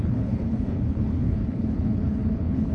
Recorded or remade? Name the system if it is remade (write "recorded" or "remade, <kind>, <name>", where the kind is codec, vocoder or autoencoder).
remade, codec, HILCodec